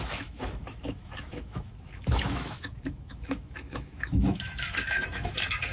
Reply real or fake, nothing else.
fake